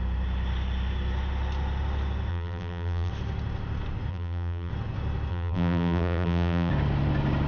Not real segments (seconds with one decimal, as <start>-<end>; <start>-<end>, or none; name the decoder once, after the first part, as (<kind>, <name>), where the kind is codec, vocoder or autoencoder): 2.3-3.1 (vocoder, BigVGAN v2); 4.1-4.7; 5.3-6.7